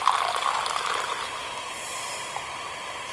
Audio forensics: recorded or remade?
recorded